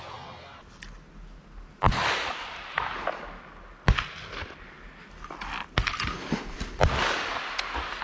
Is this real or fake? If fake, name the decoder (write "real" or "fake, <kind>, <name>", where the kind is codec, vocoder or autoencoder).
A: real